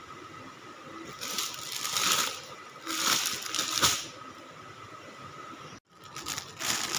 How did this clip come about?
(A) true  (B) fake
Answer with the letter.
A